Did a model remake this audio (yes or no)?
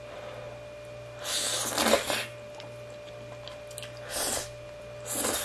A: no